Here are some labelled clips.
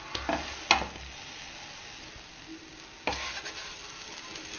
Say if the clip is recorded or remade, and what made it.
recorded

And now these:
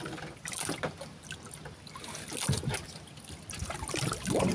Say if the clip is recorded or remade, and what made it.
recorded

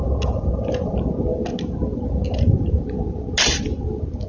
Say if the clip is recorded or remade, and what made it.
recorded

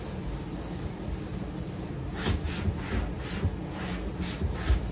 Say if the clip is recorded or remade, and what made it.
recorded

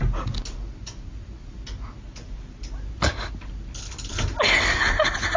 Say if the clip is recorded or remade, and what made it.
recorded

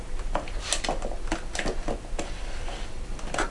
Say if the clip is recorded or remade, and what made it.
recorded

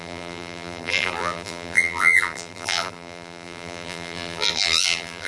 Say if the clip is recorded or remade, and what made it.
remade, vocoder, BigVGAN v2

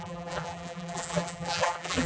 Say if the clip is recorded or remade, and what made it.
remade, vocoder, BigVGAN v2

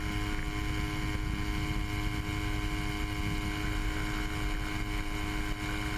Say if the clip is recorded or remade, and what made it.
recorded